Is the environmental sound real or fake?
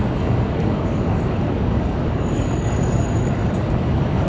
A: fake